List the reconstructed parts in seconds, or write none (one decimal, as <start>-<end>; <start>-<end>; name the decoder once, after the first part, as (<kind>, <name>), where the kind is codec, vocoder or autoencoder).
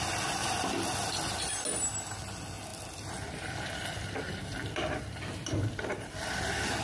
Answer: 0.4-1.5 (vocoder, BigVGAN v2); 2.7-6.8